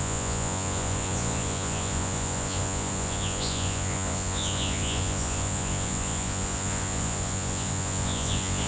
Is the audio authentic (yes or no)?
no